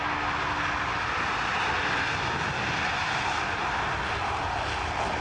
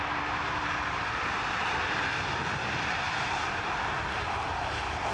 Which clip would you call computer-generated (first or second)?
second